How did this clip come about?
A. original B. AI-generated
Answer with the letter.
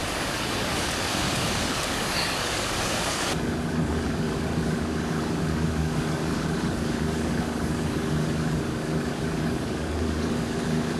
B